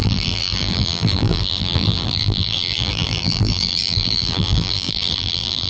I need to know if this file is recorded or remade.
remade